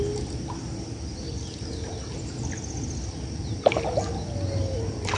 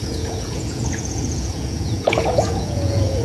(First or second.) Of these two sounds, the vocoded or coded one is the second